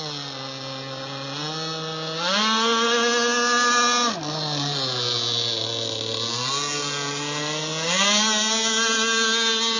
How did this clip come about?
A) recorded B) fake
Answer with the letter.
A